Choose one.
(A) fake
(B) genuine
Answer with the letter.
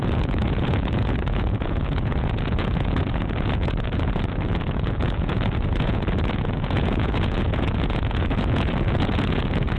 A